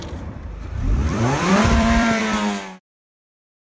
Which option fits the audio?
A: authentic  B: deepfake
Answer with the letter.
B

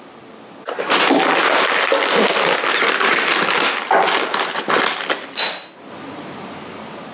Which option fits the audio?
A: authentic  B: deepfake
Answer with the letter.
A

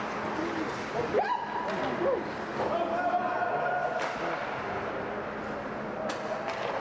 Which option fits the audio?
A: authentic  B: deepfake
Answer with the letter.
A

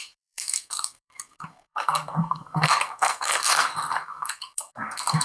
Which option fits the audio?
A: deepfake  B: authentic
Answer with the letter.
A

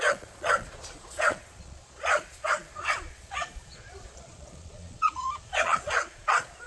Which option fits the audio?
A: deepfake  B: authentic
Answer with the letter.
A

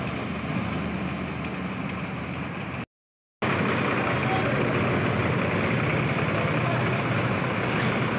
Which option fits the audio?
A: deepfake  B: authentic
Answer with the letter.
B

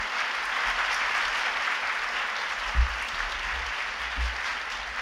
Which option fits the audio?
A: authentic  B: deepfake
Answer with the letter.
A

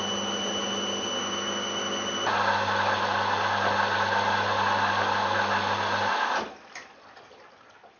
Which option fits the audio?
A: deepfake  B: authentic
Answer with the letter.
B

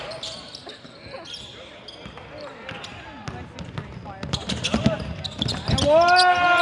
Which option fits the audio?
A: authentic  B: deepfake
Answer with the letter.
A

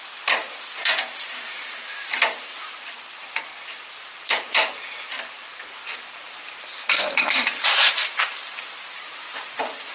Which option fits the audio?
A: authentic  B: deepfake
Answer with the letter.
B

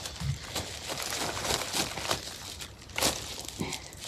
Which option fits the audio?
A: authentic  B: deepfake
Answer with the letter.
A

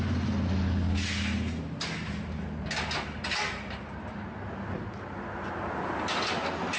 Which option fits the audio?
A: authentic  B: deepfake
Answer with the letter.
A